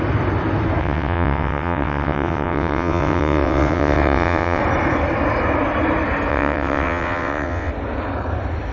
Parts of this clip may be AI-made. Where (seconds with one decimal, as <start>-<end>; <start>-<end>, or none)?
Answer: 0.8-4.6; 6.3-7.7